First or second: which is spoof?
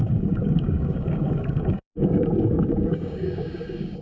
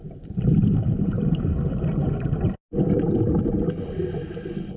first